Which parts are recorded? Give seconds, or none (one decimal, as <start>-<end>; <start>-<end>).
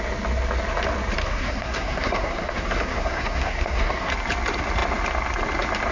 0.0-1.2; 4.1-5.9